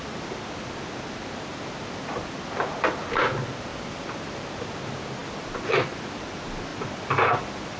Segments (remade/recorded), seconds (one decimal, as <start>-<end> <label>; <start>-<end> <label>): 0.0-3.7 recorded; 3.7-4.6 remade; 4.6-6.7 recorded; 6.7-7.8 remade